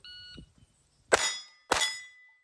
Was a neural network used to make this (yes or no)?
no